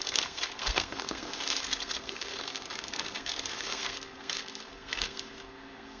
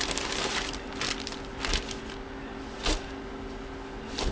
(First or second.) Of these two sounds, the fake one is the first